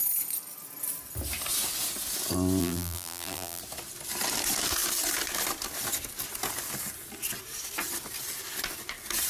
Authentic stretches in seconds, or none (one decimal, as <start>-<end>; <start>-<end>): 0.0-2.6; 3.6-9.3